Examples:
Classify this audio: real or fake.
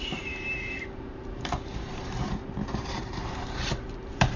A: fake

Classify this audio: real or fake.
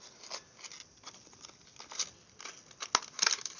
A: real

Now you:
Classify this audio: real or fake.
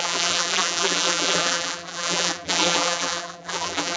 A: fake